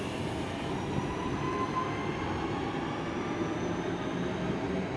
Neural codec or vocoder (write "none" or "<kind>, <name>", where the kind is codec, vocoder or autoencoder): none